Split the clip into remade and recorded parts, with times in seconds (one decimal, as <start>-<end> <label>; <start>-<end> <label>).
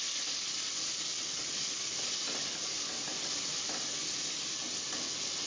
0.0-5.5 recorded